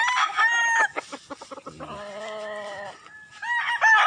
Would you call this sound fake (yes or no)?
no